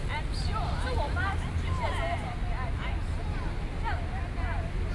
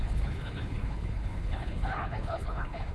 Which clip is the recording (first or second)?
first